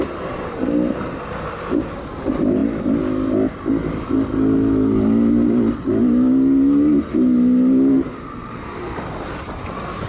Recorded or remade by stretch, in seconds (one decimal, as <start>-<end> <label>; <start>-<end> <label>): 0.0-10.1 recorded